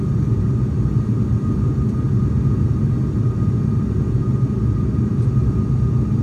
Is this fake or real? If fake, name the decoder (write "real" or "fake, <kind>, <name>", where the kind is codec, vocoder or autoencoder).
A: real